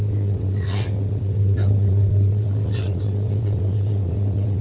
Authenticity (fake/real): fake